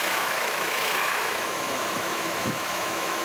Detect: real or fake fake